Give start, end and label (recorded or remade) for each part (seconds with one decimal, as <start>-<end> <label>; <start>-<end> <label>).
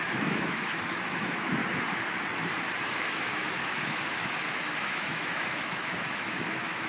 0.0-1.6 remade; 1.6-2.8 recorded; 2.8-6.9 remade